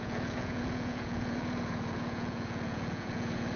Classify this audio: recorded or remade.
remade